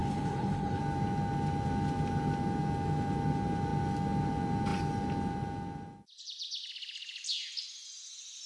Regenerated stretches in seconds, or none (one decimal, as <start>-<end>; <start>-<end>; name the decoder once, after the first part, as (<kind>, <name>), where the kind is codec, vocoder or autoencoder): 0.0-0.8 (codec, HILCodec)